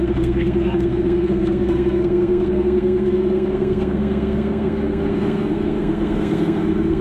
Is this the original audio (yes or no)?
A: no